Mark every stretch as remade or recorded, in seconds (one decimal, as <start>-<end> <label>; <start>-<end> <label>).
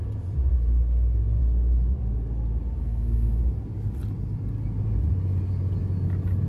0.0-2.8 recorded; 2.8-3.4 remade; 3.4-6.5 recorded